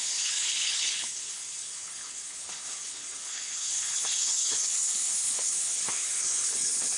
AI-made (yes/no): yes